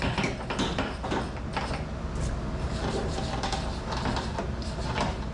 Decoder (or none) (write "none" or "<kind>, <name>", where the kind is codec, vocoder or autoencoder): none